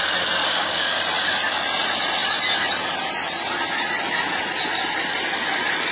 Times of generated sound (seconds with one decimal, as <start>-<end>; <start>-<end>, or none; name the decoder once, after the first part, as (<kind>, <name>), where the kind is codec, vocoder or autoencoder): 0.4-1.0 (codec, DAC)